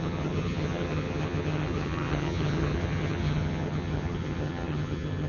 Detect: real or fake fake